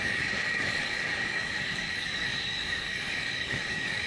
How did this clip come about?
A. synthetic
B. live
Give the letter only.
A